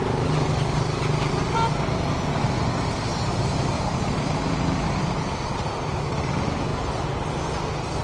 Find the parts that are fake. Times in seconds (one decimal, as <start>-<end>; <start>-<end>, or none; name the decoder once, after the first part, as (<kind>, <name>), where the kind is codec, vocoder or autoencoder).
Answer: none